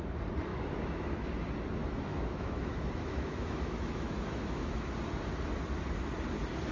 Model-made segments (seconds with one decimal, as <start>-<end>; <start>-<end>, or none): 0.5-1.3; 1.8-4.9